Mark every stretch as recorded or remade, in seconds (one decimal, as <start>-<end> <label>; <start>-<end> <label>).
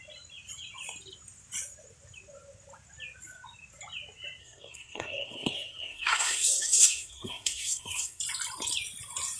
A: 0.0-4.4 recorded; 4.4-8.2 remade; 8.2-9.4 recorded